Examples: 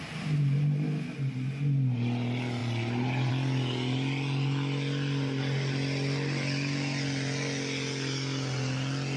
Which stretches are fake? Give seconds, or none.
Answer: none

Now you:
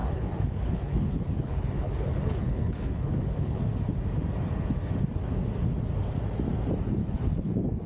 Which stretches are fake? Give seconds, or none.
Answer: 0.0-3.6 (codec, HILCodec); 7.0-7.9

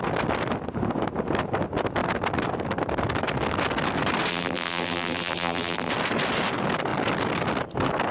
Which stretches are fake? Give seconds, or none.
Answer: 4.3-5.9 (vocoder, BigVGAN v2)

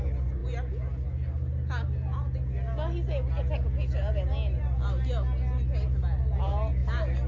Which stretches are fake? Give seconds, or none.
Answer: none